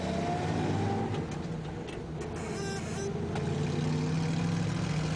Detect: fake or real real